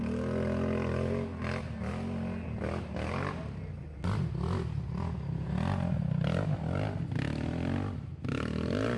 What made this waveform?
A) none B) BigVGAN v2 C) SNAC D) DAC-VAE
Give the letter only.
A